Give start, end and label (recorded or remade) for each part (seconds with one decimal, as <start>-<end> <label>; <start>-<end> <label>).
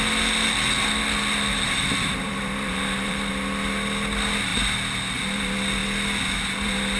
0.0-1.5 recorded; 1.5-3.3 remade; 3.3-7.0 recorded